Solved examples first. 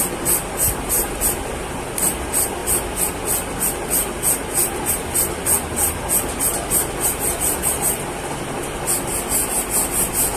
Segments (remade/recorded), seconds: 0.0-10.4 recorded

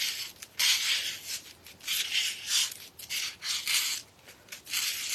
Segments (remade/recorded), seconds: 0.0-5.1 recorded

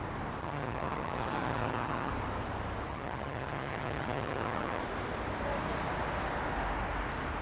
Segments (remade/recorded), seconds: 0.0-0.4 recorded; 0.4-2.1 remade; 2.1-2.9 recorded; 2.9-4.8 remade; 4.8-7.4 recorded

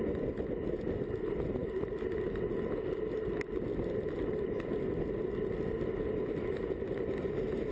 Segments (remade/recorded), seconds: 0.0-7.7 recorded

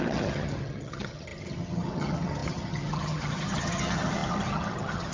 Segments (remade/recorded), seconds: 0.0-5.1 remade

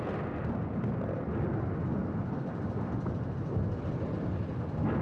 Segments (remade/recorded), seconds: 0.0-2.0 recorded; 2.0-2.6 remade; 2.6-5.0 recorded

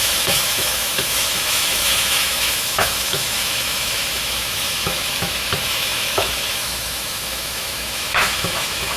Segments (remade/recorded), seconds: 0.0-9.0 remade

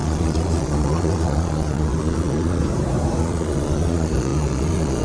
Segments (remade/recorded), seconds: 0.0-2.6 remade; 2.6-3.2 recorded; 3.2-5.0 remade